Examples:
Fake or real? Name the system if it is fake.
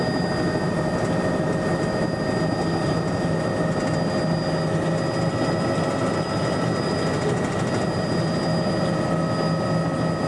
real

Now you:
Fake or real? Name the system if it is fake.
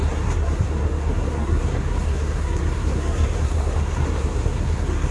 fake, codec, SNAC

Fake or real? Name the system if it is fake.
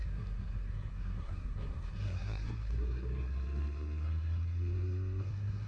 fake, codec, SNAC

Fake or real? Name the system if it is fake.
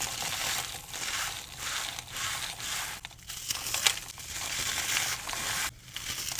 real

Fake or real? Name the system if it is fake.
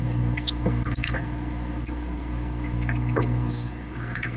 fake, codec, SNAC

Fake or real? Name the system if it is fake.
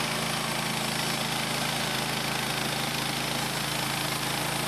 real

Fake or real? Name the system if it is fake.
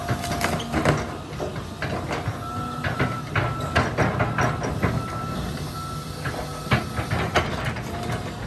real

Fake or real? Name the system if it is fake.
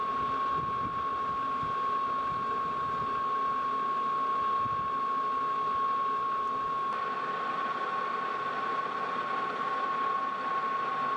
real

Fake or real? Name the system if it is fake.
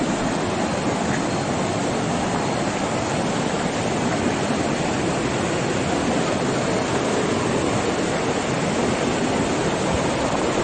real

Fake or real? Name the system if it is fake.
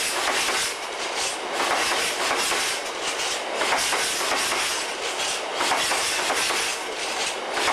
real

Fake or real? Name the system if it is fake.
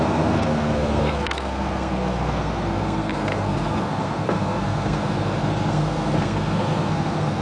fake, codec, SNAC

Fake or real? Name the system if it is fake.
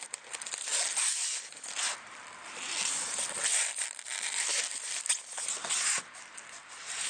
real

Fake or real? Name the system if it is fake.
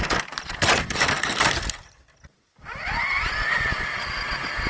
real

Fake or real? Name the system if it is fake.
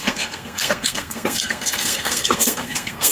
fake, codec, SNAC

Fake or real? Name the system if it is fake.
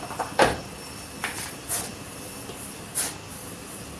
real